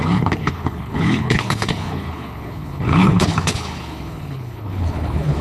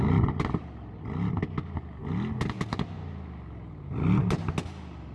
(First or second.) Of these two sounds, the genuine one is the second